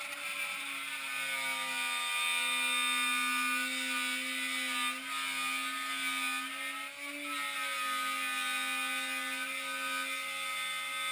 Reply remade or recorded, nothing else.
recorded